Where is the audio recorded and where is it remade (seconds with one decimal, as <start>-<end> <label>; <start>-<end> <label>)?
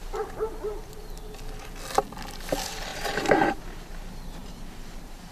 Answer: 0.0-2.9 recorded; 2.9-3.6 remade; 3.6-4.4 recorded; 4.4-5.3 remade